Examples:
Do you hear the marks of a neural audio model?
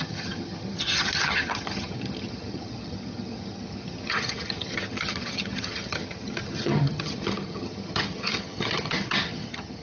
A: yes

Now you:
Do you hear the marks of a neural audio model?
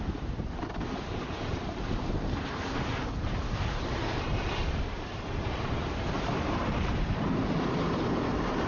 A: yes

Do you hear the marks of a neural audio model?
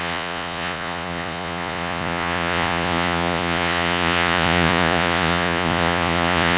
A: yes